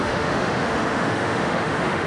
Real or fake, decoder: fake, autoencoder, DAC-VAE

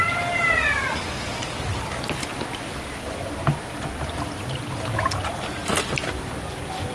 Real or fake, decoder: real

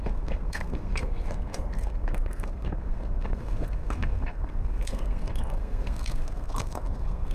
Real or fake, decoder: fake, codec, SNAC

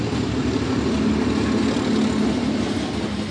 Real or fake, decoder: real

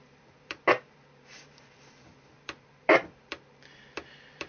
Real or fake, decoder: fake, vocoder, BigVGAN v2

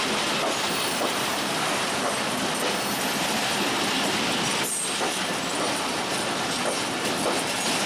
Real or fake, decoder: real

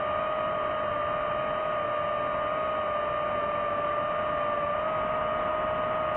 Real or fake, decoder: real